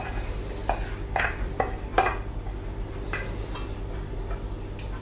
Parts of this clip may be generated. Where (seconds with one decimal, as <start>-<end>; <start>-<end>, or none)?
0.0-0.6; 1.2-1.9